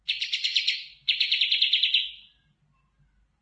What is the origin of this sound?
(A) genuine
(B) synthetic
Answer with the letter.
A